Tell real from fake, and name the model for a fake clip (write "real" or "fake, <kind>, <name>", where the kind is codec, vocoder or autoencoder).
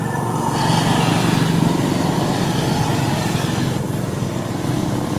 real